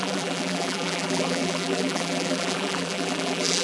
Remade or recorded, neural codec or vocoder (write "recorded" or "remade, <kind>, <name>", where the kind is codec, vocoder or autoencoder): remade, vocoder, BigVGAN v2